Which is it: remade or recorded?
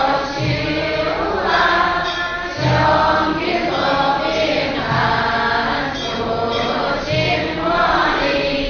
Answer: recorded